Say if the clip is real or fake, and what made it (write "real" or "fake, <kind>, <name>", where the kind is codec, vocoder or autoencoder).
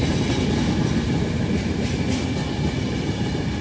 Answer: real